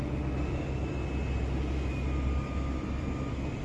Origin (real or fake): real